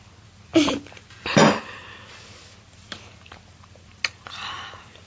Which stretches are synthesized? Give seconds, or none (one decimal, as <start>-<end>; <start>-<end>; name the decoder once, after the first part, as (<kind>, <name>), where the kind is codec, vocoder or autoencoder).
none